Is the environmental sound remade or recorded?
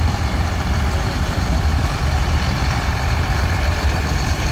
remade